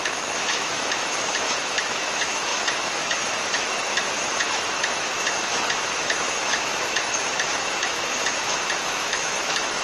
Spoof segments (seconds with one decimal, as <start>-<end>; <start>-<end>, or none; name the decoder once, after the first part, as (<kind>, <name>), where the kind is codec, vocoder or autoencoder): 0.0-9.8 (autoencoder, DAC-VAE)